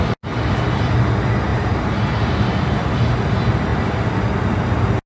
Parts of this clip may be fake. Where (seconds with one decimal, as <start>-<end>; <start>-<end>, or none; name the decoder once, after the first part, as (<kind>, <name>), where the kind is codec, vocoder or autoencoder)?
1.5-2.9 (vocoder, BigVGAN v2)